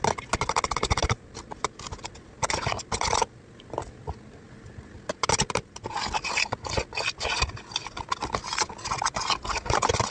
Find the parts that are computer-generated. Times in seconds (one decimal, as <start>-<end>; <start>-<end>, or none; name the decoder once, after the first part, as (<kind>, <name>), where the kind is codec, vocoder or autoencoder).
1.0-5.6 (vocoder, BigVGAN v2)